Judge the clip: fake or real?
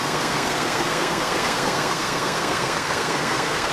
fake